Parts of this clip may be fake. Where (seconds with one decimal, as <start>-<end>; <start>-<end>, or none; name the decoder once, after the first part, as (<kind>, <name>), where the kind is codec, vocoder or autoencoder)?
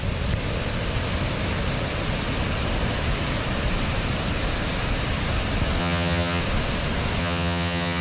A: 5.8-6.4 (vocoder, HiFi-GAN); 7.2-8.0